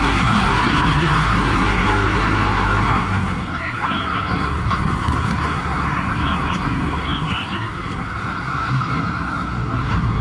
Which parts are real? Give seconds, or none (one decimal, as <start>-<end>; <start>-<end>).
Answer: none